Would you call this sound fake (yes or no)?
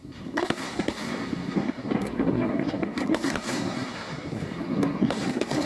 yes